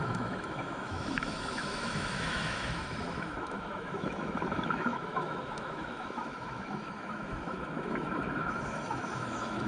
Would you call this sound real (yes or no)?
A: no